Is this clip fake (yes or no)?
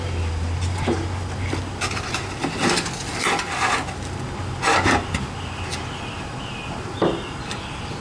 no